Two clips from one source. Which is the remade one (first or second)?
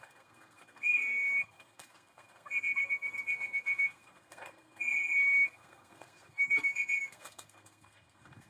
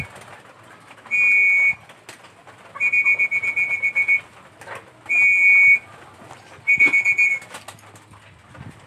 first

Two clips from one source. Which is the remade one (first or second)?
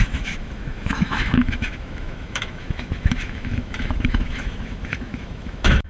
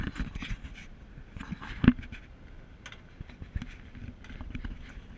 first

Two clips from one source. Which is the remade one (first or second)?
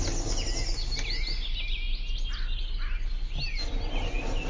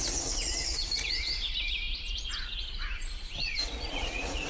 second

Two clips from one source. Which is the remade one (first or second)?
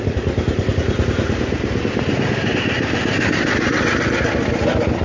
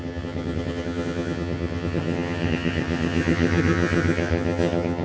second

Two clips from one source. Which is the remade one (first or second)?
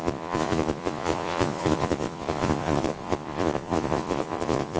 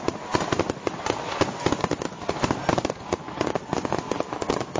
first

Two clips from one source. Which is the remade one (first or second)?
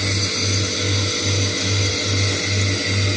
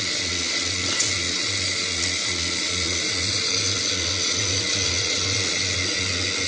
second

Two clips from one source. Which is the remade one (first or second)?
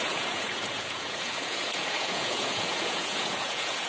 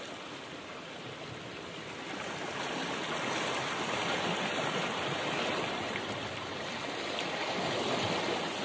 first